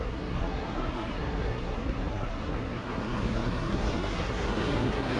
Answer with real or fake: fake